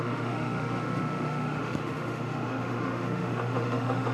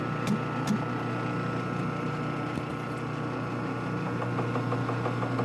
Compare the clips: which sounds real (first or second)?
second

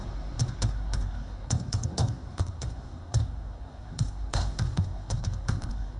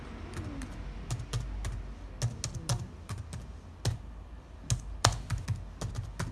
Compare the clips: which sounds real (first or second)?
second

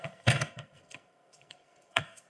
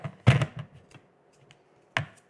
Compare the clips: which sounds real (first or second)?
second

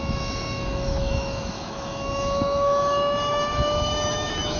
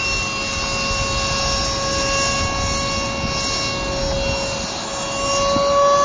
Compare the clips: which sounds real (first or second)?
second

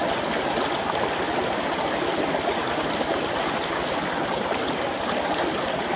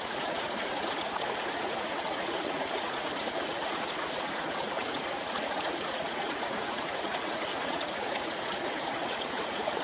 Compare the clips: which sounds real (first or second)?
first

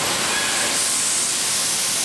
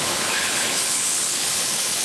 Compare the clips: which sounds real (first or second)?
first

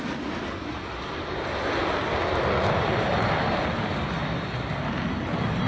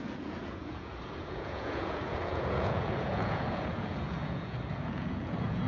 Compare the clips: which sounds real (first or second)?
first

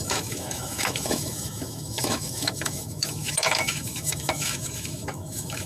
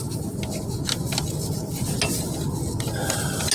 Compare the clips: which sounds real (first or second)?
second